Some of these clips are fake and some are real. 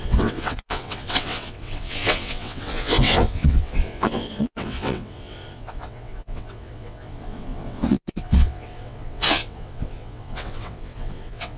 fake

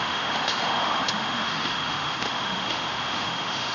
fake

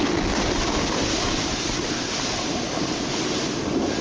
real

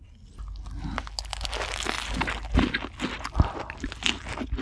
real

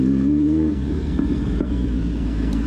fake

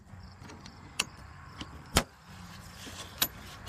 fake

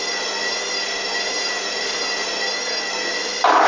real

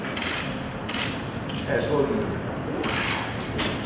real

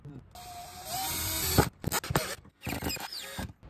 real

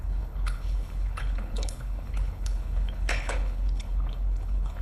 fake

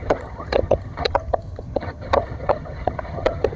fake